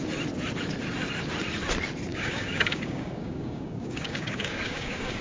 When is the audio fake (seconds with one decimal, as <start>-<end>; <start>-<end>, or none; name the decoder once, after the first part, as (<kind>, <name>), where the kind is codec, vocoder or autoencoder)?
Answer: 2.1-5.2 (codec, DAC)